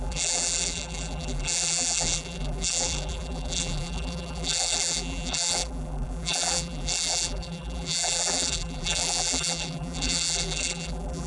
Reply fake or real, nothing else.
fake